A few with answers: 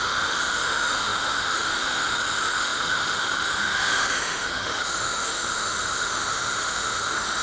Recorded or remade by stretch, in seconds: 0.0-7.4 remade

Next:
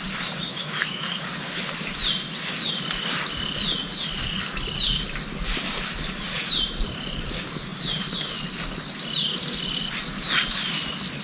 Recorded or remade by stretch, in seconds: 0.0-0.5 recorded; 0.5-1.2 remade; 1.2-11.2 recorded

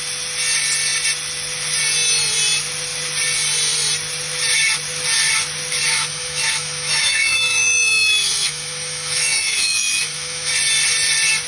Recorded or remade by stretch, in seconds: 0.0-5.9 recorded; 5.9-10.5 remade; 10.5-11.5 recorded

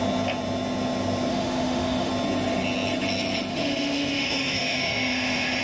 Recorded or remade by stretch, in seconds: 0.0-1.3 recorded; 1.3-2.1 remade; 2.1-3.5 recorded; 3.5-5.6 remade

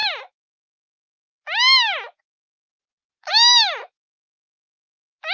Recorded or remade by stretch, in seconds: 0.0-2.7 remade; 2.7-3.3 recorded; 3.3-5.3 remade

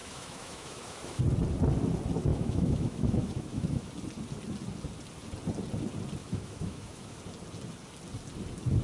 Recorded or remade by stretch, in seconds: 0.0-1.2 remade; 1.2-2.3 recorded; 2.3-3.9 remade; 3.9-6.2 recorded; 6.2-7.2 remade; 7.2-8.8 recorded

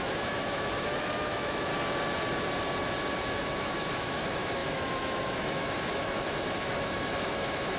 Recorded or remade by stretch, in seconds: 0.0-1.7 remade; 1.7-3.4 recorded; 3.4-7.8 remade

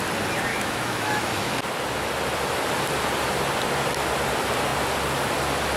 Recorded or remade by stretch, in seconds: 0.0-0.5 recorded; 0.5-1.5 remade; 1.5-5.8 recorded